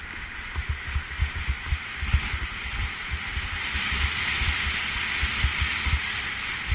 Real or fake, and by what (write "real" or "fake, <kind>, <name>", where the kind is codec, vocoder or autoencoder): real